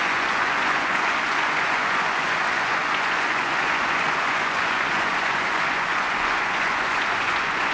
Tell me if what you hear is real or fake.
fake